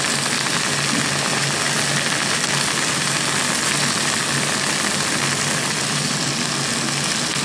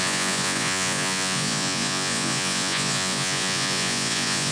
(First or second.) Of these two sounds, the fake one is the second